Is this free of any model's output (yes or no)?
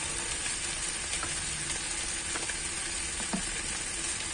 yes